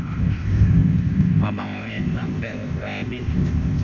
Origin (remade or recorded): remade